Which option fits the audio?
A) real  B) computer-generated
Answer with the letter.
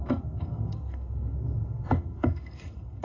B